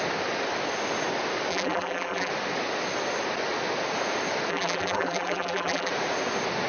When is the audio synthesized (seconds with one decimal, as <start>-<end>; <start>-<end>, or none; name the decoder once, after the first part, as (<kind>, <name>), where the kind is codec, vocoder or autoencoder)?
1.5-2.3 (vocoder, BigVGAN v2); 4.5-5.9